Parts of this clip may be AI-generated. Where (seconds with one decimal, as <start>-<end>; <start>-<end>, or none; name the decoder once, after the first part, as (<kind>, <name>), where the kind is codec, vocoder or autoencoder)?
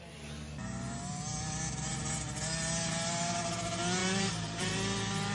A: 4.0-4.7 (vocoder, BigVGAN v2)